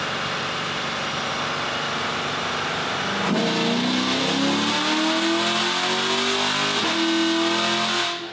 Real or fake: real